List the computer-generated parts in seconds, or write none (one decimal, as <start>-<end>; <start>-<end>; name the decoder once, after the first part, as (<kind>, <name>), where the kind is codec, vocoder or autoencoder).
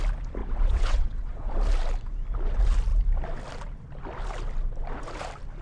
0.4-1.5 (vocoder, WaveNeXt)